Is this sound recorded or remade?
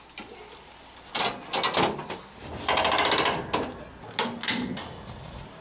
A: recorded